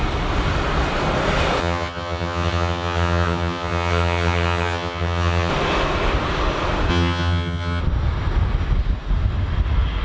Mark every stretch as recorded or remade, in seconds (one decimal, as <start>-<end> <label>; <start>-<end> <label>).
0.0-1.6 recorded; 1.6-5.5 remade; 5.5-6.9 recorded; 6.9-7.8 remade; 7.8-10.0 recorded